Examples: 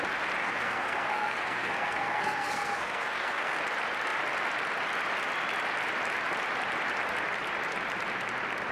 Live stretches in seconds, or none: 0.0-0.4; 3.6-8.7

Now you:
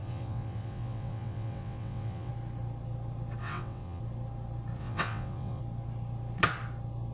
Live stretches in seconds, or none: 2.3-3.4; 4.0-4.8; 5.6-7.1

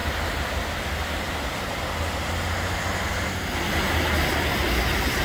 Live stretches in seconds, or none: 0.0-5.2

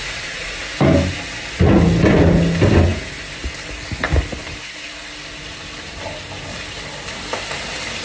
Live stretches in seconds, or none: 0.6-8.0

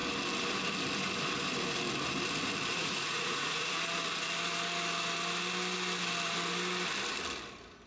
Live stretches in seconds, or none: 0.0-2.7; 3.7-7.9

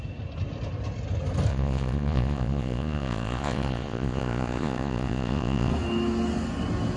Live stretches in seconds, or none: 0.0-1.5; 5.7-7.0